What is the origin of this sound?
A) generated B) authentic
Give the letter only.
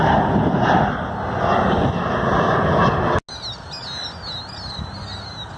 B